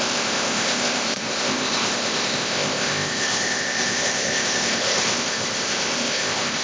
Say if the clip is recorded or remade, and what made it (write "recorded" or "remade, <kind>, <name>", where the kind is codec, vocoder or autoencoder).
remade, codec, ZipCodec